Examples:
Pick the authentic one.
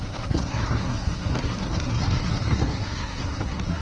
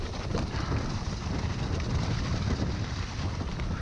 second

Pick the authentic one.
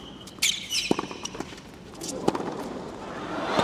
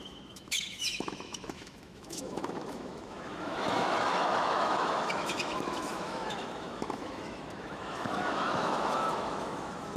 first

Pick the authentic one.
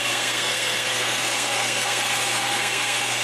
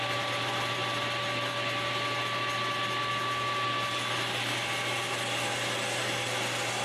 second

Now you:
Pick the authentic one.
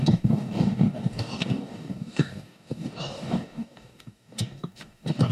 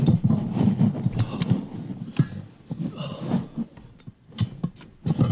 second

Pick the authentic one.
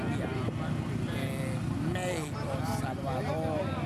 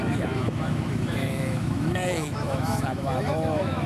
first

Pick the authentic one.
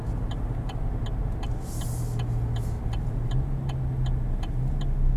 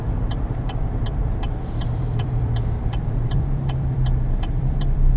first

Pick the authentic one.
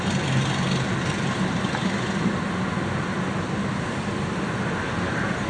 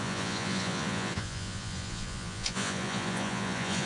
first